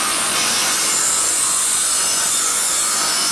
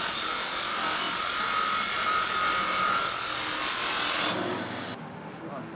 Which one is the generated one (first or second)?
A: first